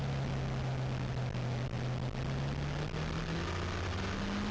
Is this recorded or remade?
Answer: recorded